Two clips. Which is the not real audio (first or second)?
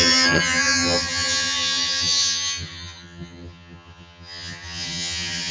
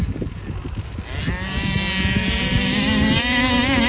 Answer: first